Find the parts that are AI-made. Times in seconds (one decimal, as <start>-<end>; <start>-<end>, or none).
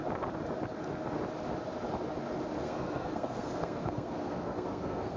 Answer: 2.6-5.2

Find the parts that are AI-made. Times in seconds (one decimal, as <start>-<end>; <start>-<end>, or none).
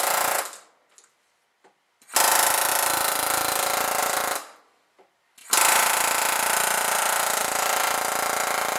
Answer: none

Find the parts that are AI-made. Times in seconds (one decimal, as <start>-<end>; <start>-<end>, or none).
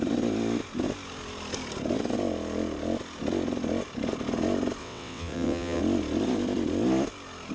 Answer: 4.8-5.8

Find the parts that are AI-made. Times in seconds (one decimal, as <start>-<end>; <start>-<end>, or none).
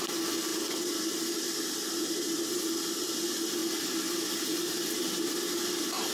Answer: 0.5-3.0; 3.6-6.1